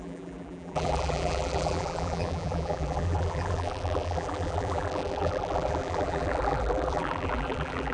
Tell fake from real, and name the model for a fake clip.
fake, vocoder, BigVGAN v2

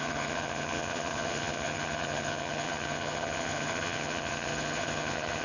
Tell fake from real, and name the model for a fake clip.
fake, vocoder, HiFi-GAN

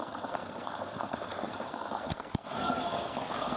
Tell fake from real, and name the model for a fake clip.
fake, codec, SNAC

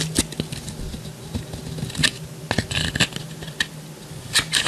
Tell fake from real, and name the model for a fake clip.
real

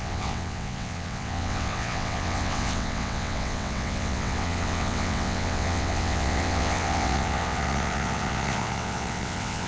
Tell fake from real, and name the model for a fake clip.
fake, vocoder, WaveNeXt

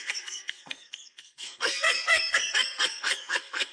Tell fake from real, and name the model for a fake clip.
fake, codec, SNAC